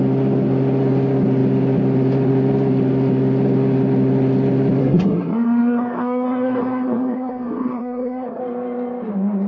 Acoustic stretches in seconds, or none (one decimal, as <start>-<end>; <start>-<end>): 0.0-4.8; 8.4-9.5